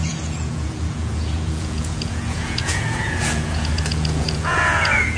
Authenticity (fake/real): fake